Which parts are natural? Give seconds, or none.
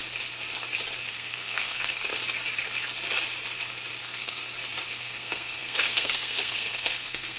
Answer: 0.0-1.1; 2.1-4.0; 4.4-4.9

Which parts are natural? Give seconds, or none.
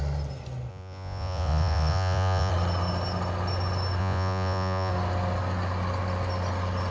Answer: 0.0-0.7; 2.5-4.0; 4.9-6.9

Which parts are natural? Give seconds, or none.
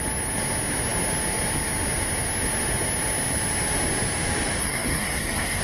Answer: 0.0-4.6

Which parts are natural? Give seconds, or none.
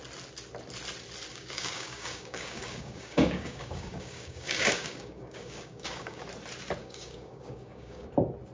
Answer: 0.0-1.3; 6.2-6.8; 8.1-8.5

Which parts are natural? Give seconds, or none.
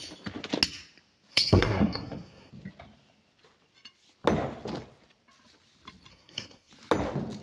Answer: 0.0-1.3; 2.5-6.1; 6.7-7.4